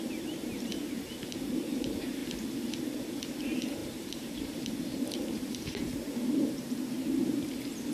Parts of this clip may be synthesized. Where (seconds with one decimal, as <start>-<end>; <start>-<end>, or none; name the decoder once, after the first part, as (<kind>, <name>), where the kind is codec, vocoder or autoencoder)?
0.0-2.2 (vocoder, BigVGAN v2); 3.4-7.9

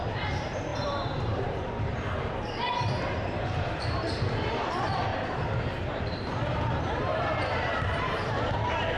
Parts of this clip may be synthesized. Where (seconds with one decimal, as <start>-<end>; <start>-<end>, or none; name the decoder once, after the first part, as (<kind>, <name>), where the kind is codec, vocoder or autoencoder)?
0.0-5.1 (vocoder, BigVGAN v2); 5.9-9.0

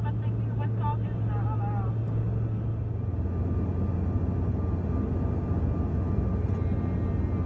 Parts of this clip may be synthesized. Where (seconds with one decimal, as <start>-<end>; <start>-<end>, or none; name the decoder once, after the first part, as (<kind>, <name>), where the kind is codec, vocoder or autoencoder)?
none

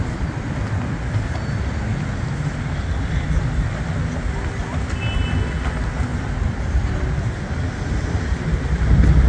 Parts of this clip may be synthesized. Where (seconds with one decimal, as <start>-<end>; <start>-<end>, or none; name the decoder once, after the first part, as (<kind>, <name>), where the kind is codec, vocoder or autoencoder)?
6.1-8.6 (vocoder, BigVGAN v2)

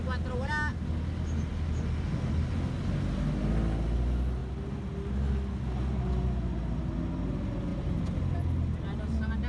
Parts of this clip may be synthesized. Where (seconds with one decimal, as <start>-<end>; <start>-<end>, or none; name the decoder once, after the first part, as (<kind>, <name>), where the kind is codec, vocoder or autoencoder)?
none

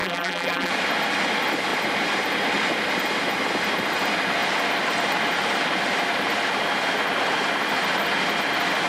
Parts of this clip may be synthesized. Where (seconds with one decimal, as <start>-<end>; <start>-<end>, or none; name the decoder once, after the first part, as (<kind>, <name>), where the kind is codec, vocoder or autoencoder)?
0.0-0.7 (vocoder, BigVGAN v2)